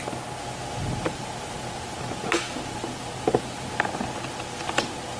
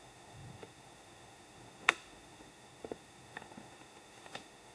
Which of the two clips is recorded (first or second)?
first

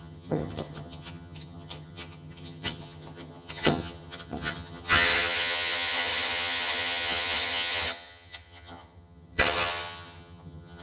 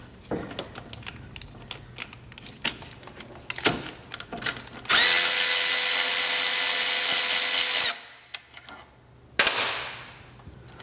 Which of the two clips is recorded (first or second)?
second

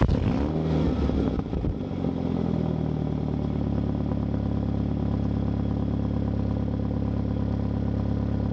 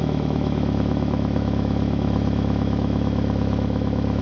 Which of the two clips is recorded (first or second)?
first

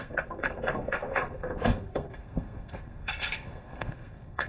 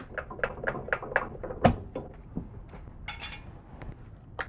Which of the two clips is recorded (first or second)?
second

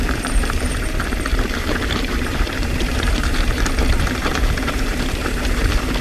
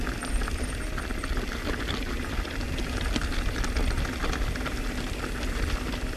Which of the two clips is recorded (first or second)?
second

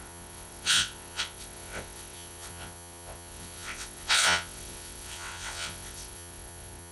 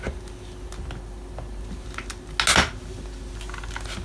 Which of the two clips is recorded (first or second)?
second